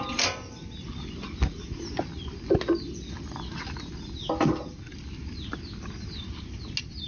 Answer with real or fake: real